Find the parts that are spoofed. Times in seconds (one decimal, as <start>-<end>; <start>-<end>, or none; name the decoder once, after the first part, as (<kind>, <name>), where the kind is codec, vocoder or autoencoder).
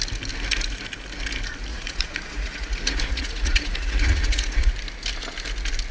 1.7-4.7 (vocoder, Vocos)